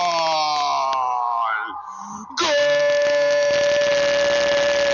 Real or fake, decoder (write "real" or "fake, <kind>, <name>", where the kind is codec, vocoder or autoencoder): real